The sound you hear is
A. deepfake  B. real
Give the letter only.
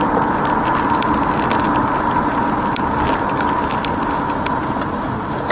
B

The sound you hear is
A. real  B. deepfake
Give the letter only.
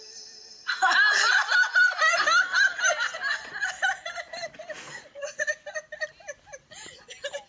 A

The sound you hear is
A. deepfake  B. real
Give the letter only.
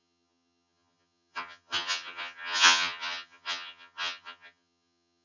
A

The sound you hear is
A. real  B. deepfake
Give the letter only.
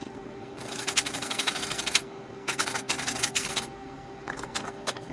B